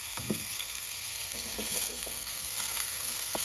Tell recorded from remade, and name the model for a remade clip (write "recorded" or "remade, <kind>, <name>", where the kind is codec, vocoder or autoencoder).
remade, codec, SNAC